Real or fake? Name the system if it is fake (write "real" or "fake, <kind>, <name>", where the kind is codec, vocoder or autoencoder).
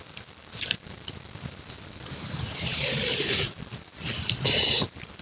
fake, vocoder, BigVGAN v2